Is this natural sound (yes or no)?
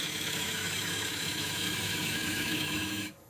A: no